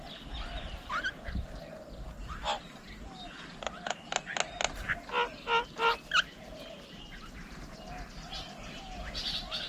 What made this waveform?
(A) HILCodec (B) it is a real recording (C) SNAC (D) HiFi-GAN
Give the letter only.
B